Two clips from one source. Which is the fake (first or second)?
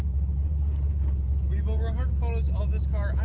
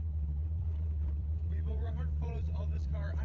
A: second